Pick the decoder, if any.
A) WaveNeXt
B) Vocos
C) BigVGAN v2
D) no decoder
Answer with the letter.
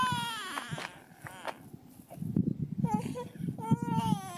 D